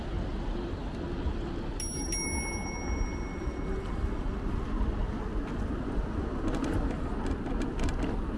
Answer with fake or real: real